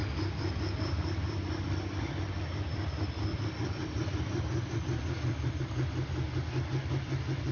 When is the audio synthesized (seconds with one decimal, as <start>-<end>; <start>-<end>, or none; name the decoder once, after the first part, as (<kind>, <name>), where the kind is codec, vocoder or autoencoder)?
0.0-2.2 (vocoder, BigVGAN v2); 3.3-5.6